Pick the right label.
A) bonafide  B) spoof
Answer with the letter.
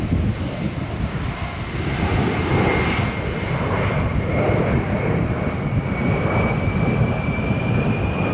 A